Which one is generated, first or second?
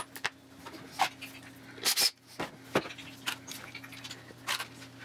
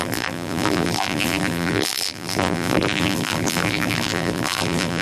second